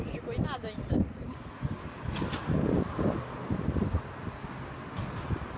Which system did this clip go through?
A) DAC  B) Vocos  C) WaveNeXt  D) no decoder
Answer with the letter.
D